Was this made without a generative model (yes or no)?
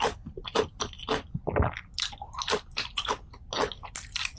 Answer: yes